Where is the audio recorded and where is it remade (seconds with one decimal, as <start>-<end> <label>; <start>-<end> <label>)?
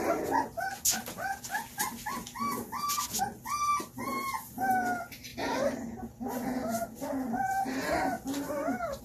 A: 0.0-9.0 recorded